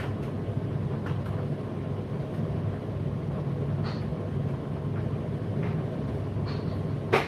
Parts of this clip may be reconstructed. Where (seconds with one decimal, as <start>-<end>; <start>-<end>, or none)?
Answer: none